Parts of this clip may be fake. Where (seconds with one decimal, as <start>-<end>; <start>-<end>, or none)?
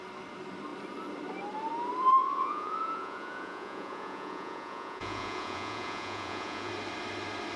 2.2-6.7